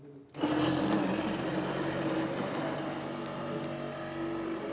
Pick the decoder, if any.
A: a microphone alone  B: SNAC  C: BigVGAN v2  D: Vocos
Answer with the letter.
A